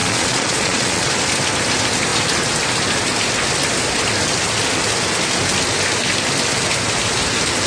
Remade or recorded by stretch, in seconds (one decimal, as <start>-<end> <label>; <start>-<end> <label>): 0.0-1.1 remade; 1.1-7.7 recorded